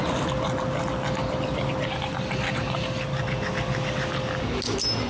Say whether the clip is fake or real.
real